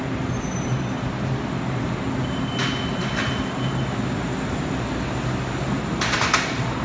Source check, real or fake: real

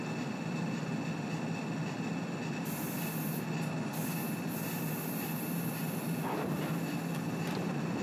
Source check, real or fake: real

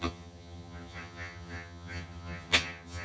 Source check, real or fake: fake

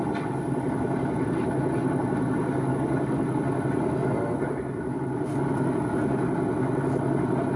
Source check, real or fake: real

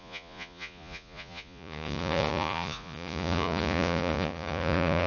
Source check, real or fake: fake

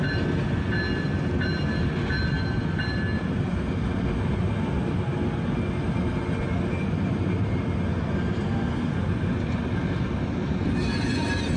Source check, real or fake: real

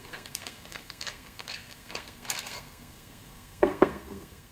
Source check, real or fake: fake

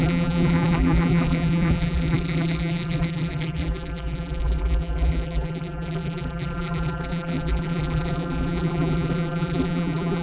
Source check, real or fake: fake